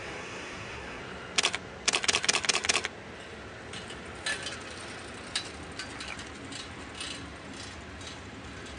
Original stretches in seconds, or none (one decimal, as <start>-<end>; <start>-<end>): 1.0-8.8